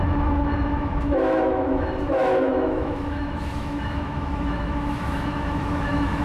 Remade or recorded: remade